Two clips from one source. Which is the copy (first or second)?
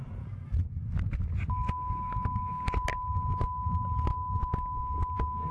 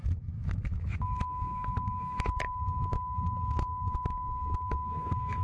second